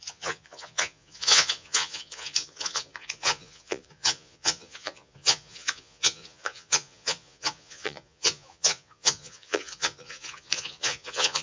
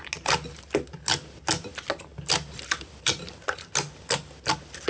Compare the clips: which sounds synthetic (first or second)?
first